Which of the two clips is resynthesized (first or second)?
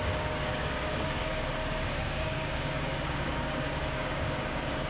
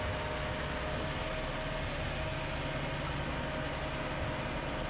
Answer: first